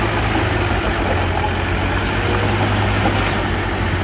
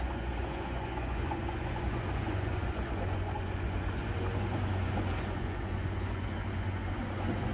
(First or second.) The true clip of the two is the first